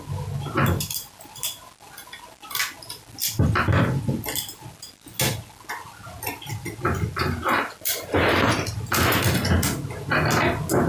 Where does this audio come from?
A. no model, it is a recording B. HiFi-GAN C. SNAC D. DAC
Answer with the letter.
A